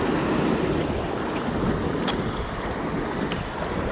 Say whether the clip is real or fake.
real